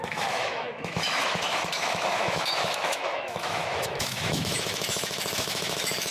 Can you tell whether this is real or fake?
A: fake